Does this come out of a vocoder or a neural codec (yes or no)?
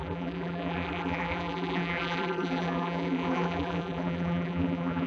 yes